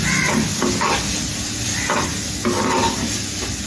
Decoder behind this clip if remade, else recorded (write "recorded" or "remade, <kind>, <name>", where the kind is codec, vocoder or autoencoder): recorded